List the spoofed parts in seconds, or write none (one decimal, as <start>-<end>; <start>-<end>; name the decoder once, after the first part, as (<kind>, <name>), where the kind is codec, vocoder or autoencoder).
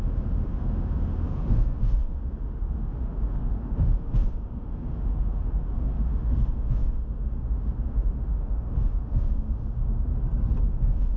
0.0-10.1 (autoencoder, DAC-VAE); 10.6-11.2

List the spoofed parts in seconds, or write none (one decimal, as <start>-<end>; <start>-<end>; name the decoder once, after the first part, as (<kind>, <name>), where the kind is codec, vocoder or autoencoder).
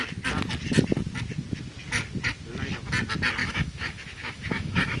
3.4-5.0 (autoencoder, DAC-VAE)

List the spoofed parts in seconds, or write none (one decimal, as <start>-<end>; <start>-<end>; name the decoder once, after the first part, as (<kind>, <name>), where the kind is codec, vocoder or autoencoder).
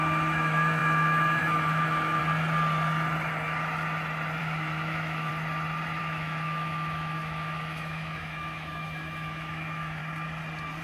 0.0-2.2 (autoencoder, DAC-VAE); 4.4-5.3; 6.0-10.0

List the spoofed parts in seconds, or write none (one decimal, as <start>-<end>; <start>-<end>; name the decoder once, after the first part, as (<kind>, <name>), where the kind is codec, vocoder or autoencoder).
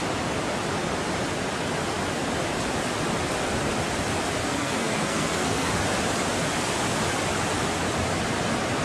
4.4-5.7 (codec, SNAC)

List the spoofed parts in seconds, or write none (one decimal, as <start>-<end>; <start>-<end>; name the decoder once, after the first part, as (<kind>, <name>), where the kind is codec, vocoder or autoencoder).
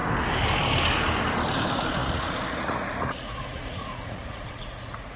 2.0-5.2 (vocoder, Vocos)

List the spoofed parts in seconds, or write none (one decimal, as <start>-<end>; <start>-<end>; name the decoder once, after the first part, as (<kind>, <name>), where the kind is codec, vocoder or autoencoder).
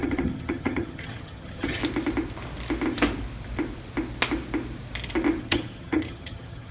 0.0-1.8 (vocoder, HiFi-GAN); 5.4-6.7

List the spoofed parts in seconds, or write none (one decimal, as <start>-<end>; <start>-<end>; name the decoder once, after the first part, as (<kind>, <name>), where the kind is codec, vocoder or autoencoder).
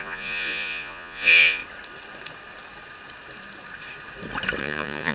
0.0-1.6 (vocoder, Vocos); 4.6-5.1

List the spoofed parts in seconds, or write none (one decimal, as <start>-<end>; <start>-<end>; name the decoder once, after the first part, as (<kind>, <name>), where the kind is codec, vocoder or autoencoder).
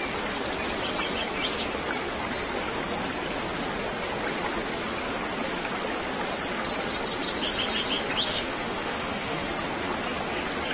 8.3-9.5 (autoencoder, DAC-VAE)